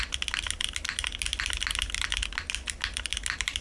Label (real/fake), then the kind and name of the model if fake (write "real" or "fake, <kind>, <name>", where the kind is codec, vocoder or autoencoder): real